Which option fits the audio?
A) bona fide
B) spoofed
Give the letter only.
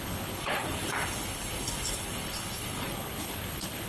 B